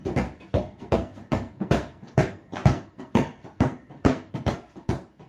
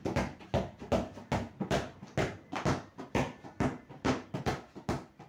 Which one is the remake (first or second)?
first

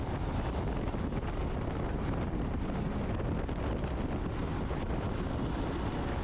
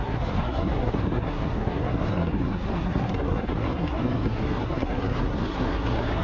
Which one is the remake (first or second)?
second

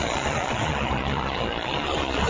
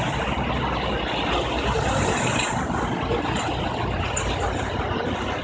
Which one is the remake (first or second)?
first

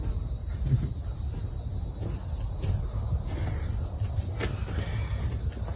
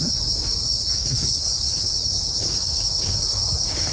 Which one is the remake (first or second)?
second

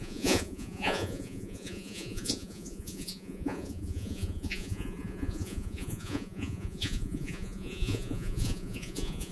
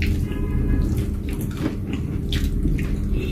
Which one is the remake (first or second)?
first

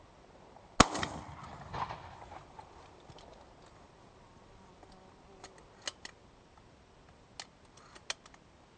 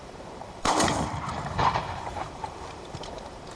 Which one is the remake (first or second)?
second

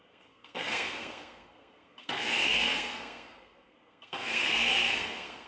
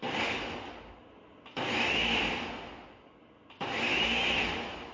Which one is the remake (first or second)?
first